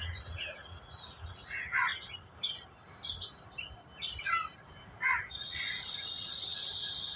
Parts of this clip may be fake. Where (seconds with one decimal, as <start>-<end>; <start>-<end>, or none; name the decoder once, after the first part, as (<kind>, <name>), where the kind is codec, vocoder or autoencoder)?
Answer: 0.0-1.9 (vocoder, Vocos); 5.3-6.5